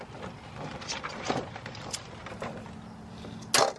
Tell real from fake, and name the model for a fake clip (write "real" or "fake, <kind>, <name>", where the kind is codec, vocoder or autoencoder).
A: real